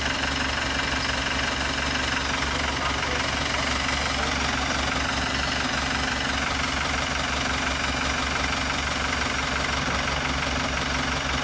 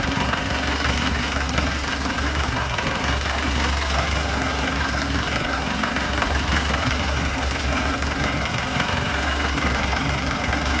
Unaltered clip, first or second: first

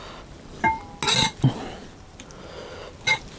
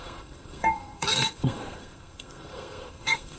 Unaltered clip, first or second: first